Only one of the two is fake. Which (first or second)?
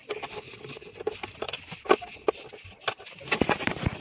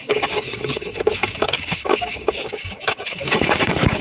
second